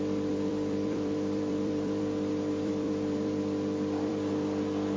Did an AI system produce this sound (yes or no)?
yes